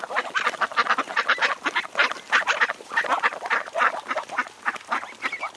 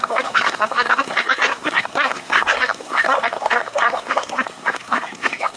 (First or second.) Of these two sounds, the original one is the first